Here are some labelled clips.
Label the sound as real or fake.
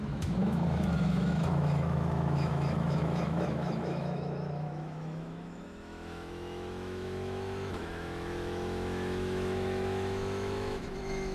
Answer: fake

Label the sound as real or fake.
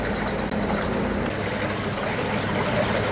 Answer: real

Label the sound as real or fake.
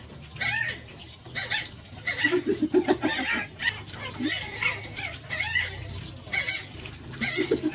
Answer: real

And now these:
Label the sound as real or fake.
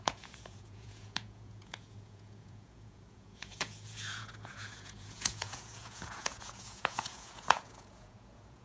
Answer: fake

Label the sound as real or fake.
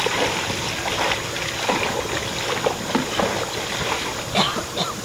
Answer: real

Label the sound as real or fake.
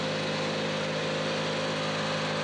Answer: real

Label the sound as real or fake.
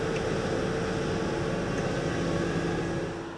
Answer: real